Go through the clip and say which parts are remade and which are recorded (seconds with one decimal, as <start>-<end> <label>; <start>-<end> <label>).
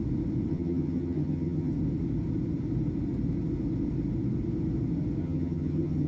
0.0-0.5 recorded; 0.5-1.7 remade; 1.7-5.2 recorded; 5.2-6.1 remade